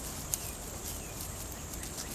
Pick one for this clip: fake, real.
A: real